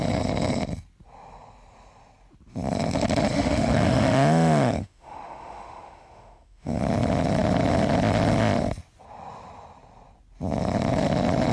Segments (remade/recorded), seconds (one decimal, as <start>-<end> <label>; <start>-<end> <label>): 0.0-3.3 recorded; 3.3-6.8 remade; 6.8-11.5 recorded